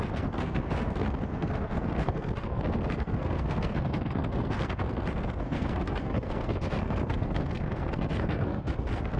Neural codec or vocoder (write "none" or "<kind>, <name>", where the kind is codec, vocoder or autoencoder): codec, SNAC